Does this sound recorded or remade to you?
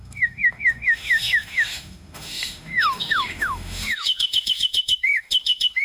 remade